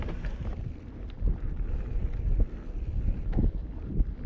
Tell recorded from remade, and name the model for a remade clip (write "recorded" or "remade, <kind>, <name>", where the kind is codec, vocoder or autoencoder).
recorded